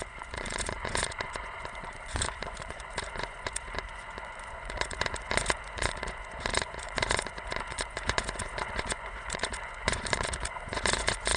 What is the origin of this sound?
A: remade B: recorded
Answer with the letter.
A